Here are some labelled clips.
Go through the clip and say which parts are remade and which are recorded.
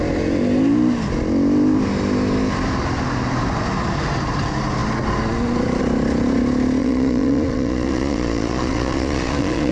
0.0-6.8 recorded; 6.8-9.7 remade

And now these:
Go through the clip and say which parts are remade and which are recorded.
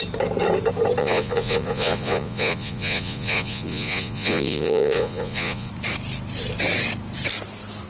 0.0-1.0 recorded; 1.0-5.7 remade; 5.7-7.9 recorded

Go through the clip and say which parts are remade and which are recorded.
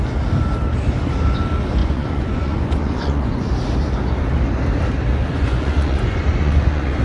0.0-1.8 recorded; 1.8-3.5 remade; 3.5-5.3 recorded; 5.3-7.0 remade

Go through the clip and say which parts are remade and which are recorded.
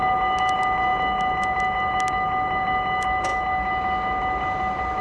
0.0-5.0 recorded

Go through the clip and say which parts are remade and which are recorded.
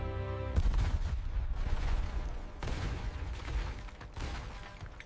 0.0-0.5 recorded; 0.5-3.6 remade; 3.6-5.1 recorded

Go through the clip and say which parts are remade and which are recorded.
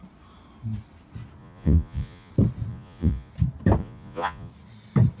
0.0-1.4 recorded; 1.4-2.3 remade; 2.3-2.7 recorded; 2.7-3.3 remade; 3.3-3.8 recorded; 3.8-4.5 remade; 4.5-5.2 recorded